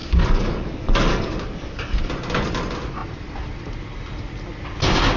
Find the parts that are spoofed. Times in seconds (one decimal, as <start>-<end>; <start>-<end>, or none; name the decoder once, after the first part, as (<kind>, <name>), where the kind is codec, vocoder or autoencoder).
0.0-2.0 (codec, DAC)